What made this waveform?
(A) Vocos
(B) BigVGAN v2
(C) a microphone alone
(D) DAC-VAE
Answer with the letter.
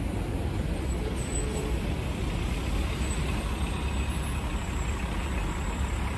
C